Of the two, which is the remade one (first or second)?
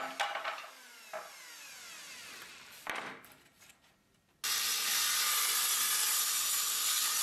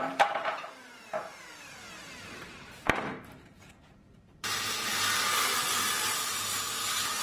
second